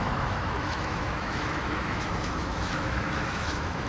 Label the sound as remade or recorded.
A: remade